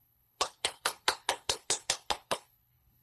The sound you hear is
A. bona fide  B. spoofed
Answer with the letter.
B